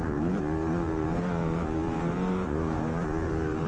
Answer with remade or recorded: remade